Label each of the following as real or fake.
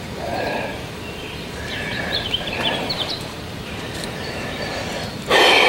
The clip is fake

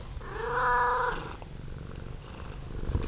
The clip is real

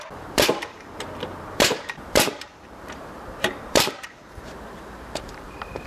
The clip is fake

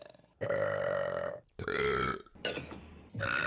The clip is fake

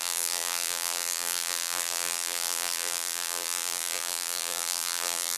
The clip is fake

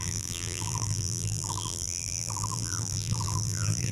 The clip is fake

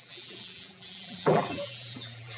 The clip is fake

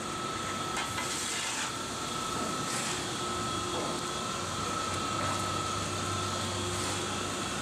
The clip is real